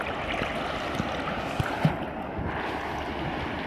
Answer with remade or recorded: recorded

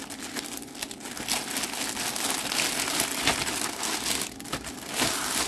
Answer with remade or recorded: recorded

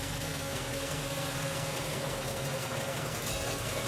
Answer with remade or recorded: remade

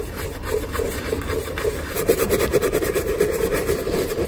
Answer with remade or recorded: remade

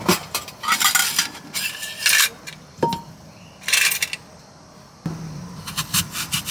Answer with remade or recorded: recorded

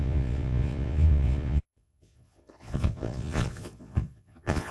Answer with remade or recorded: remade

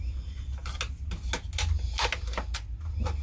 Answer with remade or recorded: recorded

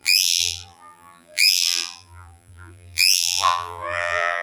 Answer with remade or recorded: remade